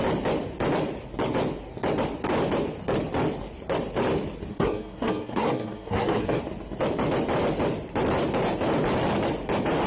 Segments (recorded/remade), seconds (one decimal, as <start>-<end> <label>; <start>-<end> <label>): 0.0-4.5 recorded; 4.5-6.4 remade; 6.4-9.9 recorded